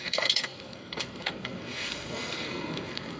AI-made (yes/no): yes